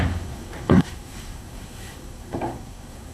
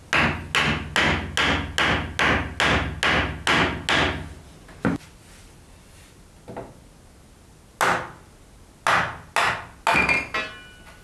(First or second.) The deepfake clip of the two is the first